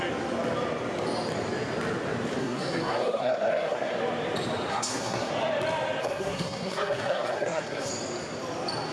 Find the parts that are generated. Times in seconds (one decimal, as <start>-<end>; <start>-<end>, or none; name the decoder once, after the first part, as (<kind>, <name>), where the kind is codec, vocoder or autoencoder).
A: 2.4-4.0 (codec, SNAC); 4.7-5.3; 6.0-7.9